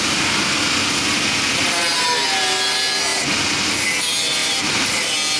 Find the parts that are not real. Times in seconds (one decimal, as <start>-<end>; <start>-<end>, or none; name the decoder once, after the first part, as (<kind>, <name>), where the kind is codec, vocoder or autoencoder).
4.4-5.0 (vocoder, BigVGAN v2)